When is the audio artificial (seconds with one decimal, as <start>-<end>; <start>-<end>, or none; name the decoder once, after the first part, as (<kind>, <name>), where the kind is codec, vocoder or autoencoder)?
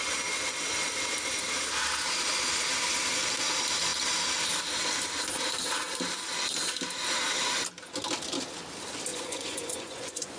9.1-10.4 (vocoder, Vocos)